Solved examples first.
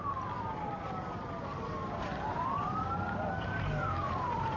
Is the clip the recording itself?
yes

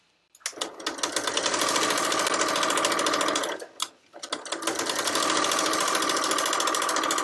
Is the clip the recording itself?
yes